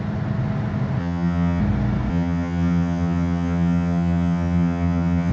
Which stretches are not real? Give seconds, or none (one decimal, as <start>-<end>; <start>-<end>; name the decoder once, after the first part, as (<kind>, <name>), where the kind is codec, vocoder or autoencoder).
1.0-1.6 (vocoder, HiFi-GAN); 2.1-5.3